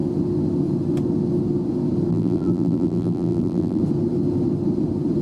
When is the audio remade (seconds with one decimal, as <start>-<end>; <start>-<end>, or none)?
2.1-3.8